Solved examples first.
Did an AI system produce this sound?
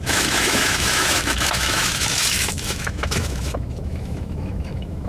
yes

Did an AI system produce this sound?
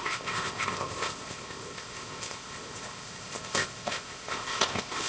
yes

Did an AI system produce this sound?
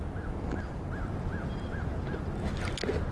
no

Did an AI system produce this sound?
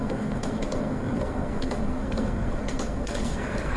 yes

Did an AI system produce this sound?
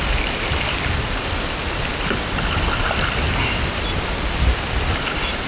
no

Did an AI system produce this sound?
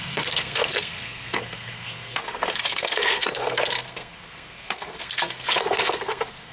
yes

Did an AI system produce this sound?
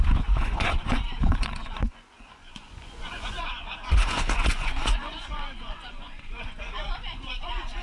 yes